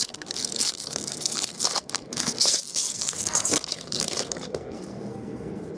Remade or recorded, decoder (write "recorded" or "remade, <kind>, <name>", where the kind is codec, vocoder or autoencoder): remade, codec, SNAC